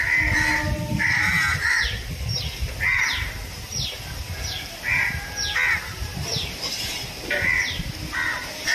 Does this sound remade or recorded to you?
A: recorded